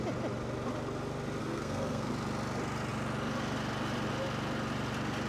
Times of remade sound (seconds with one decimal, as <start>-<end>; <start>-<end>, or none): 1.4-2.1